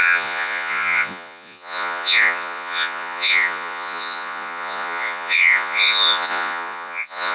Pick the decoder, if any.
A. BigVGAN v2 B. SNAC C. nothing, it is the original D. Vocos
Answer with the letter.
D